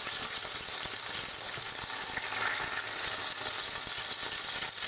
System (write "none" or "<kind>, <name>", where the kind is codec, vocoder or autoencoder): none